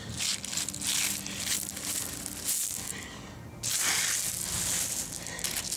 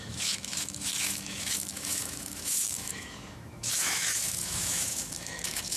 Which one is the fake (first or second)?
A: second